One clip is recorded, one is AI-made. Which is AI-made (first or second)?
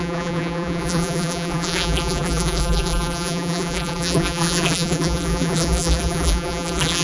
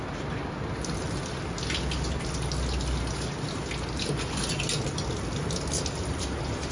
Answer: first